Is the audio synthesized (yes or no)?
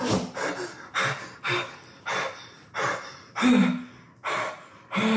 no